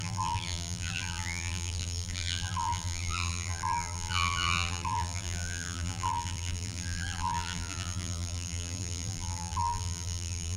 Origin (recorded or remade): remade